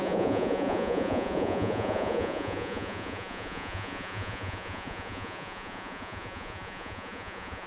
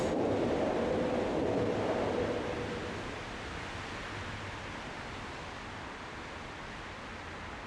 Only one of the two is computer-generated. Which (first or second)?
first